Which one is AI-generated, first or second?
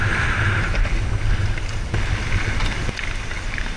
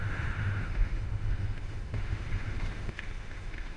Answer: second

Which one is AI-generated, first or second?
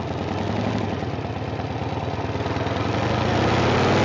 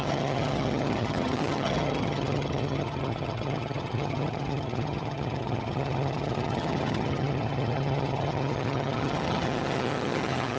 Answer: second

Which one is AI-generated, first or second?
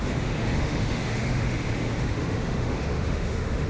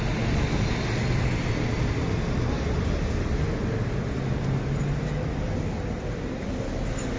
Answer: first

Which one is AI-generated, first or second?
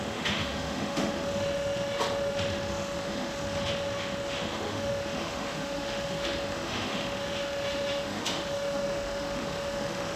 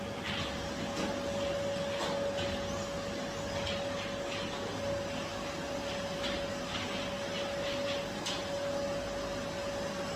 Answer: first